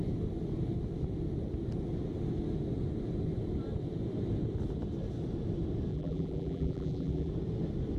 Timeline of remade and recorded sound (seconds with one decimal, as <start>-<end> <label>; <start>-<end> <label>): 0.0-5.9 recorded; 5.9-7.3 remade; 7.3-8.0 recorded